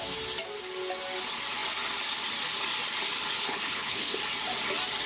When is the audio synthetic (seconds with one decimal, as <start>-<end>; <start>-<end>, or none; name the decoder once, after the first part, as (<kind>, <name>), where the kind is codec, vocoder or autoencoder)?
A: 3.4-4.2 (codec, HILCodec)